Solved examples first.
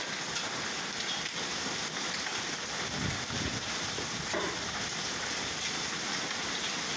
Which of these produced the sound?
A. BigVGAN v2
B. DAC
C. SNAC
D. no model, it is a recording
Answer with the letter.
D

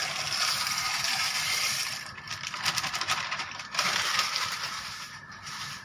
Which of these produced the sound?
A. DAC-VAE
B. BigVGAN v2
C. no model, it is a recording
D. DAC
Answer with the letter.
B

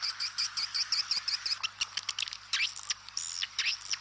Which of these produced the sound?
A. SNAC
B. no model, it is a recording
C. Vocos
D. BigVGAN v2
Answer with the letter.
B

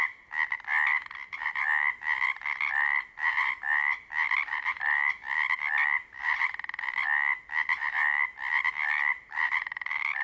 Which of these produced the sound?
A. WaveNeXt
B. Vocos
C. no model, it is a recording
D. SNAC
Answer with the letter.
C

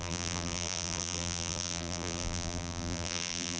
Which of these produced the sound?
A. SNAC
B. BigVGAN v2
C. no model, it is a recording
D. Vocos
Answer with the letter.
B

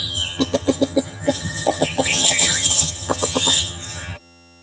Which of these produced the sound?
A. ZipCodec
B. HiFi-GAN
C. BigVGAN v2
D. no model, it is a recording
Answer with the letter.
B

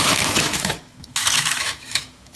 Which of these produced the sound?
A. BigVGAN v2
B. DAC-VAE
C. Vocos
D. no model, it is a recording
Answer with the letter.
B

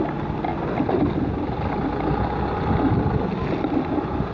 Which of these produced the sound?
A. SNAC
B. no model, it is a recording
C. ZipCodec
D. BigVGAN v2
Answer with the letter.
B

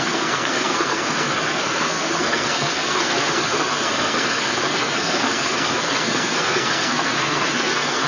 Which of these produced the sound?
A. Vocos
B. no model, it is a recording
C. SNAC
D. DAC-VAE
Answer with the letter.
C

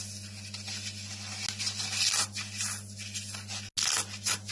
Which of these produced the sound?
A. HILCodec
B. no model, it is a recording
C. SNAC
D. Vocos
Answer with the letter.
B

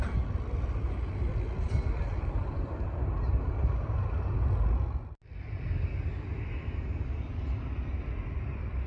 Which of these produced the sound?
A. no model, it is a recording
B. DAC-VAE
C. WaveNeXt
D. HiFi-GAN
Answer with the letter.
A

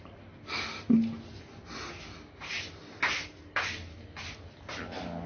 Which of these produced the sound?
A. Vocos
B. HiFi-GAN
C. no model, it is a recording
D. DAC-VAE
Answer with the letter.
C